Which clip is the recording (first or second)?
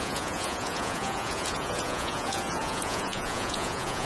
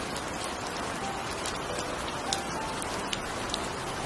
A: second